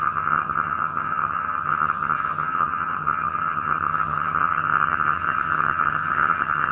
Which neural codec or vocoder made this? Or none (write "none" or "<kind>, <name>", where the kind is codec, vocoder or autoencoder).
vocoder, HiFi-GAN